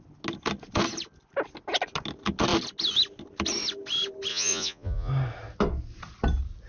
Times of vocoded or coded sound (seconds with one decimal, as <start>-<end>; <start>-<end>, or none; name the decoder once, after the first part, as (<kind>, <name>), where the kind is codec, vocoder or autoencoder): 4.3-5.1 (vocoder, Vocos)